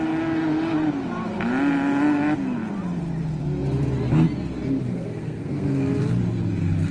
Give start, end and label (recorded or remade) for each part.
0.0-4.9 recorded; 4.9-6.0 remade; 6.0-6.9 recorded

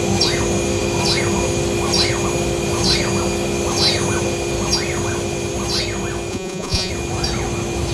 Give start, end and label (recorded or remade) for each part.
0.0-6.3 recorded; 6.3-6.9 remade; 6.9-7.9 recorded

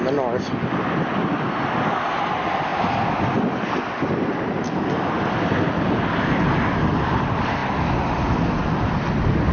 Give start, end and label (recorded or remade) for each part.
0.0-9.5 recorded

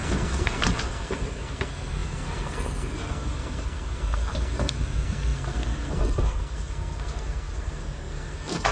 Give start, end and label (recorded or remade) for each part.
0.0-8.7 remade

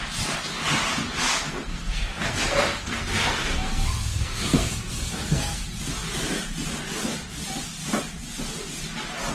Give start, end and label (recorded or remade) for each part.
0.0-1.3 recorded; 1.3-5.6 remade; 5.6-9.3 recorded

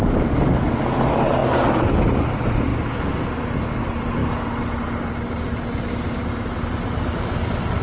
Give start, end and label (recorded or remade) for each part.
0.0-7.8 recorded

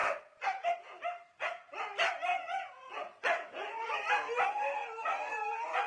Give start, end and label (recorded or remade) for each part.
0.0-0.8 remade; 0.8-2.3 recorded; 2.3-4.1 remade; 4.1-5.9 recorded

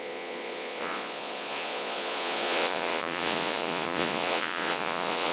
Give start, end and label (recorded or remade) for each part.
0.0-5.3 remade